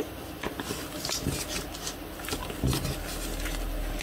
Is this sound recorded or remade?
recorded